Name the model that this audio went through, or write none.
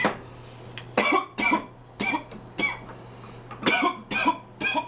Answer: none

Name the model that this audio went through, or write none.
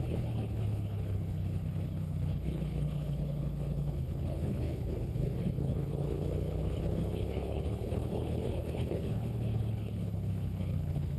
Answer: codec, HILCodec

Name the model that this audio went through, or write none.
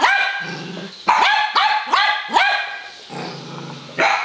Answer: none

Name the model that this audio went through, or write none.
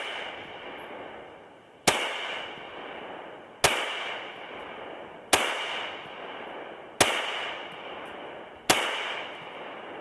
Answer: none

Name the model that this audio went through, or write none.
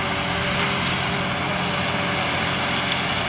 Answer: none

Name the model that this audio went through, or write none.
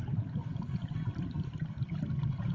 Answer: none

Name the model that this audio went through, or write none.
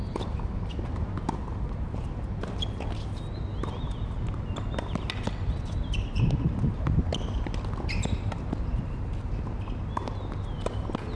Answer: none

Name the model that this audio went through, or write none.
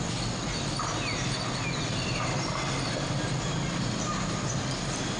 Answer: none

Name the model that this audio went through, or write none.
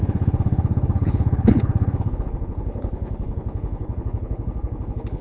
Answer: codec, HILCodec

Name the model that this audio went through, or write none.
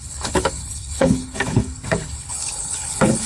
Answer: codec, HILCodec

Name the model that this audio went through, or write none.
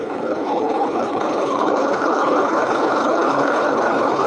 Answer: codec, HILCodec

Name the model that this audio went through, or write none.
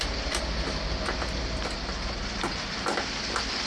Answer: none